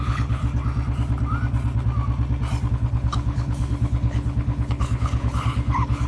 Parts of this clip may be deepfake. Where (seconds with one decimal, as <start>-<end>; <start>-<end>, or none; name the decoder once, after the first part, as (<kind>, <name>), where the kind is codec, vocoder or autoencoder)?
0.0-0.4 (codec, HILCodec); 2.7-6.1